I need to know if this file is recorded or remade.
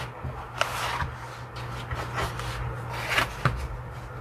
recorded